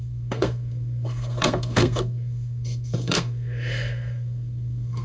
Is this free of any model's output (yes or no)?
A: no